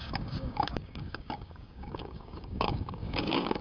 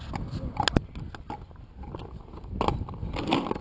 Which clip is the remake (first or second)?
first